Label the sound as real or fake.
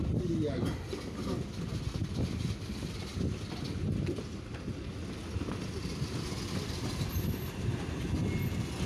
real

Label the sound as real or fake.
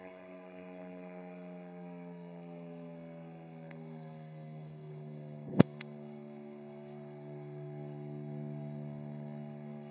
fake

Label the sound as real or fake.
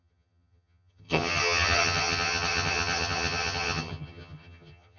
fake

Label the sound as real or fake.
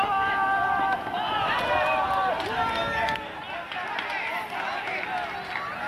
real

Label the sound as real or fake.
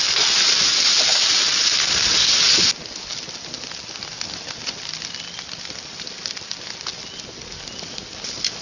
real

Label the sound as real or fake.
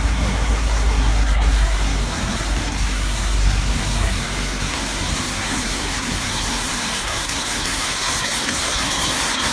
fake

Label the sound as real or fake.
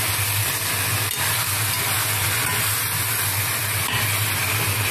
real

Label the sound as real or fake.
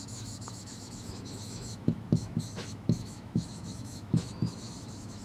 fake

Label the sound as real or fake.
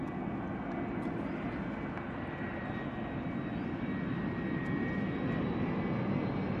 real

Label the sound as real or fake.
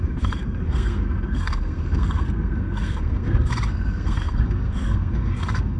fake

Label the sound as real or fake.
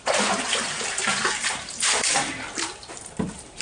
fake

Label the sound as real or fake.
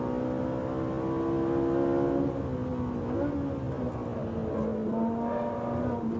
real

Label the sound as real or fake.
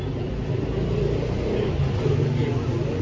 real